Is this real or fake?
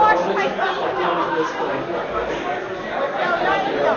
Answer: real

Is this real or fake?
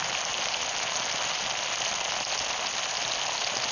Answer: real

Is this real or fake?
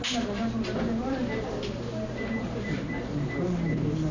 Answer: real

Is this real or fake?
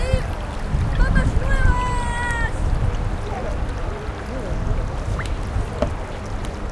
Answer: real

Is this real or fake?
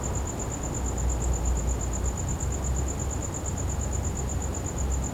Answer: real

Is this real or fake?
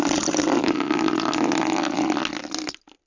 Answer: real